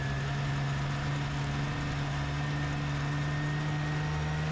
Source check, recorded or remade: recorded